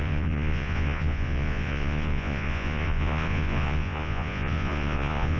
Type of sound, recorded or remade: remade